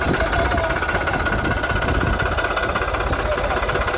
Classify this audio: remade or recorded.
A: recorded